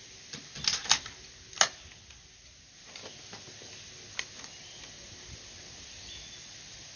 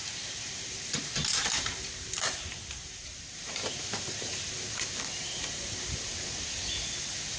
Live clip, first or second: first